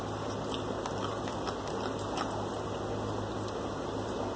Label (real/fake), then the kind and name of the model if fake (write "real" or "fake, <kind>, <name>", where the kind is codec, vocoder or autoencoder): real